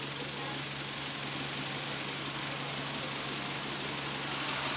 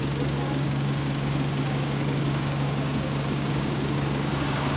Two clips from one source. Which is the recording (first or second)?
first